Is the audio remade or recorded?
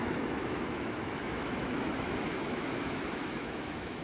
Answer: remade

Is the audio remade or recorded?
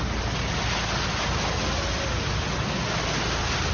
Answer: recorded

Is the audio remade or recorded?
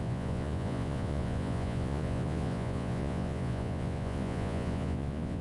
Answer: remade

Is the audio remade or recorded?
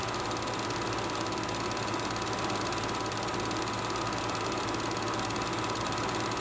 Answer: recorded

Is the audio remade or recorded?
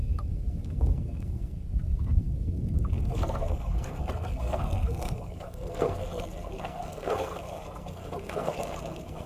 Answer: remade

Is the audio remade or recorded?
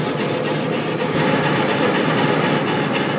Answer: recorded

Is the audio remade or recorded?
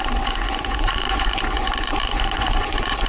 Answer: remade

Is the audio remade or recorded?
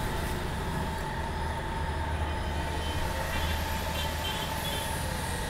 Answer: recorded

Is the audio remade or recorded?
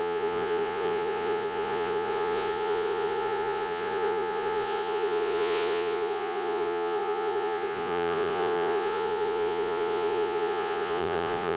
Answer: remade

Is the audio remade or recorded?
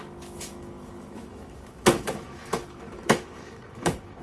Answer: remade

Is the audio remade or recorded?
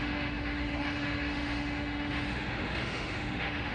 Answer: remade